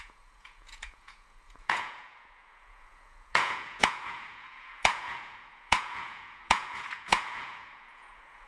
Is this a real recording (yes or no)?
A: no